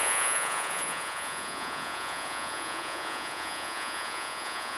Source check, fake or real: fake